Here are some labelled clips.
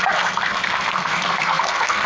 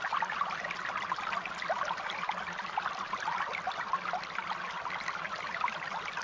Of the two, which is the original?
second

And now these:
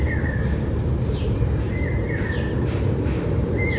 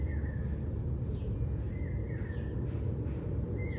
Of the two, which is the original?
second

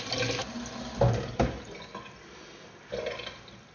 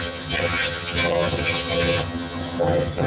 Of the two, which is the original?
first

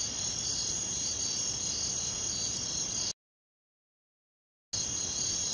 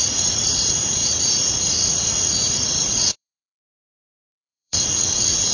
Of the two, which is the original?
first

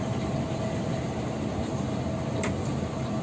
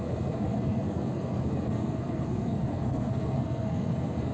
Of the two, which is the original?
first